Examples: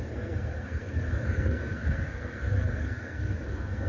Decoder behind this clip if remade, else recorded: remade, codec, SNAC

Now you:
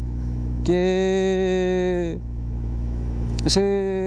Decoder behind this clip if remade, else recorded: remade, autoencoder, DAC-VAE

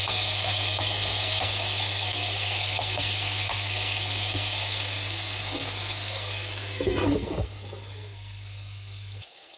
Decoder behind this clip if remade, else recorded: remade, codec, SNAC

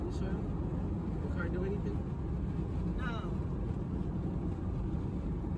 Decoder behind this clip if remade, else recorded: recorded